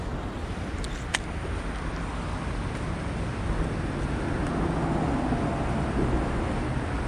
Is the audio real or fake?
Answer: real